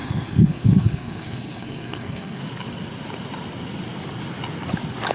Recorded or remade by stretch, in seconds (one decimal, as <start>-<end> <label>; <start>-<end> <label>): 0.0-2.4 remade; 2.4-5.1 recorded